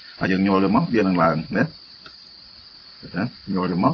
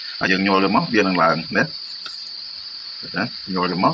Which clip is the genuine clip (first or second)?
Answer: second